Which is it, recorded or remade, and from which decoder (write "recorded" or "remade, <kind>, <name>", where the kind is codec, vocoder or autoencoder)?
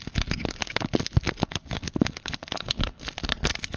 recorded